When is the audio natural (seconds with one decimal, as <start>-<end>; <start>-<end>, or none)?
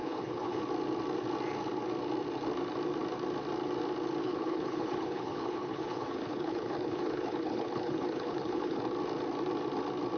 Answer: 0.6-4.2; 8.8-10.2